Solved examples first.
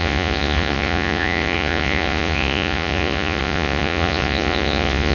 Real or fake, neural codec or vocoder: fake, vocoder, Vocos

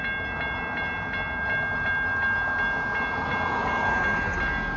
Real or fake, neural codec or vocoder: real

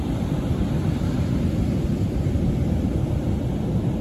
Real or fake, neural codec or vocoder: real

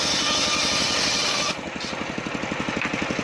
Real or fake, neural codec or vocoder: real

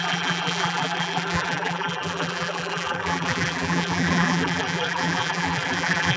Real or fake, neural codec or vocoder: fake, vocoder, BigVGAN v2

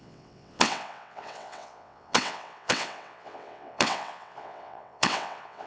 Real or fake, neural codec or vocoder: fake, vocoder, WaveNeXt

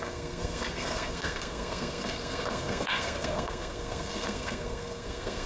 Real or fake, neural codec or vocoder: fake, codec, SNAC